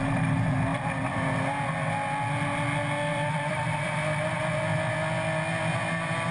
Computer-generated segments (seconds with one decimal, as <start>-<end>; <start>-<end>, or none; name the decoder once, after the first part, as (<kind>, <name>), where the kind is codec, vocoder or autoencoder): 0.7-1.4 (vocoder, BigVGAN v2); 3.1-4.6